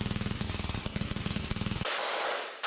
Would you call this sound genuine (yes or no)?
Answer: yes